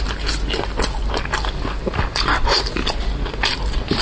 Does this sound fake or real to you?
real